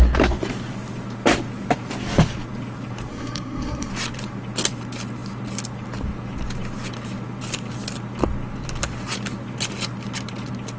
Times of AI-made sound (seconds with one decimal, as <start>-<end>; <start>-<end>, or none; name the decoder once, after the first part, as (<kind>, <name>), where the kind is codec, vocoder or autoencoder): 3.1-3.9 (codec, SNAC)